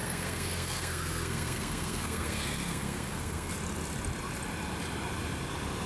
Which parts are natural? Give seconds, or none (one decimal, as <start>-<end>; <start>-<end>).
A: 3.5-5.9

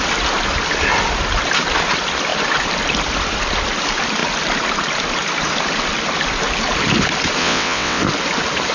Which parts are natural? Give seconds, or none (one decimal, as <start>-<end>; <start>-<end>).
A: 0.0-7.4; 8.0-8.7

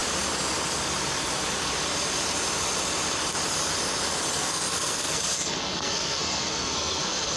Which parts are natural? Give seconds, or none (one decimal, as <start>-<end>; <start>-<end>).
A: 0.0-4.4

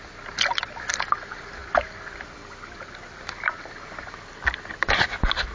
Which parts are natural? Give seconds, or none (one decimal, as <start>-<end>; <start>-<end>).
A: 0.0-5.5

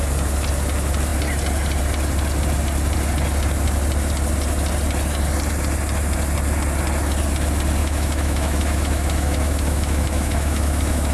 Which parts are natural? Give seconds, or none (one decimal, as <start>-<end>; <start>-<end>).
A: 0.0-7.8

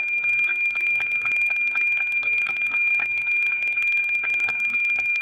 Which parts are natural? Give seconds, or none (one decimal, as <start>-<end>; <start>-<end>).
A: none

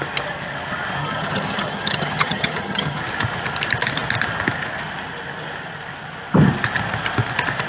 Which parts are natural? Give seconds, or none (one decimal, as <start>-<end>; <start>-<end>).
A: 0.0-1.0; 3.0-7.7